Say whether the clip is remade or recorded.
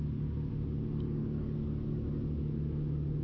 recorded